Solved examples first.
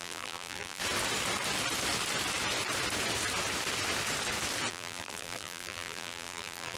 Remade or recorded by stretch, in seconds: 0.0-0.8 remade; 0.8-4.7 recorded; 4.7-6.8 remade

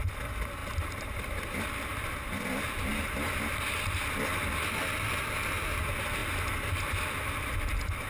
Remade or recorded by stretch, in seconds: 0.0-0.6 recorded; 0.6-2.2 remade; 2.2-8.1 recorded

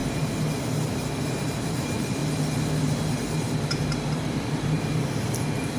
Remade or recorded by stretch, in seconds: 0.0-1.0 recorded; 1.0-2.2 remade; 2.2-3.1 recorded; 3.1-5.8 remade

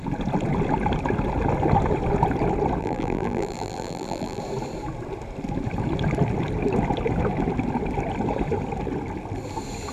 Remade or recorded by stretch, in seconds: 0.0-2.8 recorded; 2.8-4.4 remade; 4.4-9.9 recorded

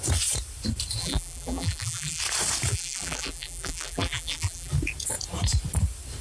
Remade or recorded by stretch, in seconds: 0.0-1.0 recorded; 1.0-2.2 remade; 2.2-2.7 recorded; 2.7-4.7 remade; 4.7-6.2 recorded

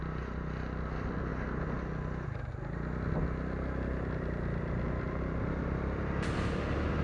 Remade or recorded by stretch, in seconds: 0.0-7.0 recorded

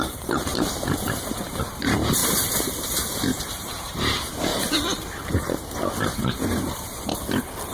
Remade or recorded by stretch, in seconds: 0.0-4.5 remade; 4.5-6.0 recorded; 6.0-7.7 remade

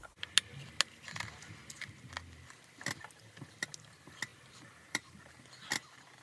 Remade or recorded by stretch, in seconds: 0.0-4.3 recorded; 4.3-5.5 remade; 5.5-6.2 recorded